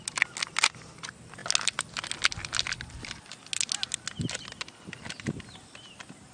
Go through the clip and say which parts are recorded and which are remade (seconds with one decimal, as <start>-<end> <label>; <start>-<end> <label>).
0.0-6.3 recorded

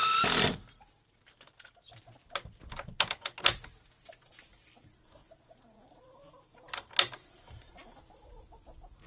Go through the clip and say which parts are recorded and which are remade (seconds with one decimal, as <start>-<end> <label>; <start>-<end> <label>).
0.0-5.2 recorded; 5.2-8.3 remade; 8.3-9.1 recorded

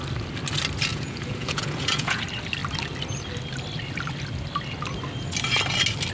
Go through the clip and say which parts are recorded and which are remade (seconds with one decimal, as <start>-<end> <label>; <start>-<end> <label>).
0.0-0.9 recorded; 0.9-2.2 remade; 2.2-6.1 recorded

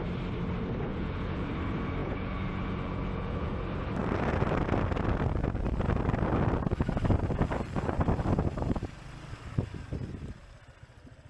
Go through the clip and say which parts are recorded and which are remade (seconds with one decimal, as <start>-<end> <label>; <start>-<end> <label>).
0.0-0.9 recorded; 0.9-1.5 remade; 1.5-2.0 recorded; 2.0-3.6 remade; 3.6-11.3 recorded

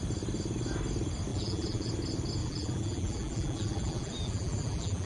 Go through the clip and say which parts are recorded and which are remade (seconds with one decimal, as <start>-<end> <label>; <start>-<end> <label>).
0.0-1.3 recorded; 1.3-1.9 remade; 1.9-2.4 recorded; 2.4-5.1 remade

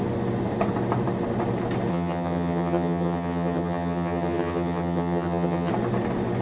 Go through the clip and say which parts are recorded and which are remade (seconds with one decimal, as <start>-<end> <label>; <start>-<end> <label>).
0.0-1.9 recorded; 1.9-5.7 remade; 5.7-6.4 recorded

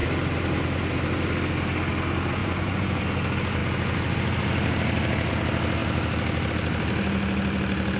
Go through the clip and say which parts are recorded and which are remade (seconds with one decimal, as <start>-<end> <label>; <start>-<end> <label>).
0.0-2.4 recorded; 2.4-3.0 remade; 3.0-8.0 recorded